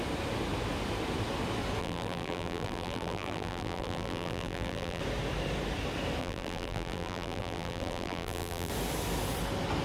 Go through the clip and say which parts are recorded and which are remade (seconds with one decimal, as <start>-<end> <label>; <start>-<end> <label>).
0.0-1.8 recorded; 1.8-5.0 remade; 5.0-6.2 recorded; 6.2-8.7 remade; 8.7-9.8 recorded